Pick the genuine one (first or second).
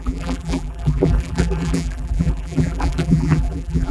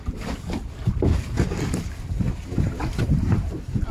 second